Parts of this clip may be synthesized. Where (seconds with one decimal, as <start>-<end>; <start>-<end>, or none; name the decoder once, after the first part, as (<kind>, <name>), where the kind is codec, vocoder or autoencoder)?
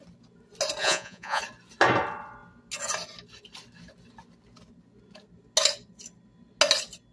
0.8-1.4 (vocoder, Vocos)